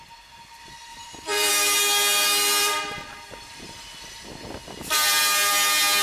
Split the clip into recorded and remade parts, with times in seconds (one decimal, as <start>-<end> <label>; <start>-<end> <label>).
0.0-0.9 recorded; 0.9-1.5 remade; 1.5-4.6 recorded; 4.6-5.2 remade; 5.2-6.0 recorded